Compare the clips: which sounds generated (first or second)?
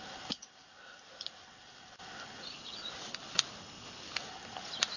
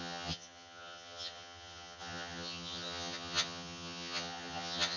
second